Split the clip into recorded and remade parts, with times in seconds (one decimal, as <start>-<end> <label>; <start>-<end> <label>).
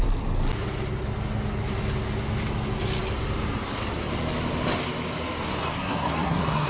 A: 0.0-5.6 recorded; 5.6-6.7 remade